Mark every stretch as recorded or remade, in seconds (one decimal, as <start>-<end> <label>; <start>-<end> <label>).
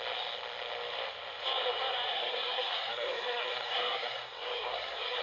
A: 0.0-2.1 recorded; 2.1-5.2 remade